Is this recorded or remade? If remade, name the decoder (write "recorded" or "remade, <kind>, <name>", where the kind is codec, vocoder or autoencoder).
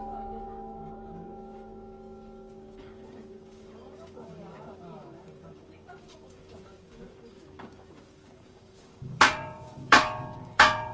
remade, codec, DAC